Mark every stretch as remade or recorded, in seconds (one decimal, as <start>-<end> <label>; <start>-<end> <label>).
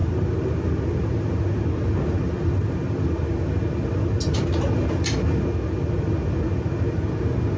0.0-7.6 recorded